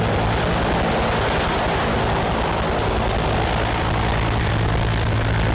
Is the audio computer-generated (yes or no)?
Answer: no